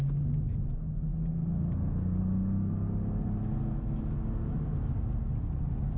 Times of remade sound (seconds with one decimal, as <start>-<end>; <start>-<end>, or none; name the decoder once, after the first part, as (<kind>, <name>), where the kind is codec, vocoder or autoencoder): none